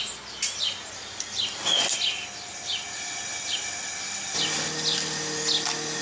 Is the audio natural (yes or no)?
yes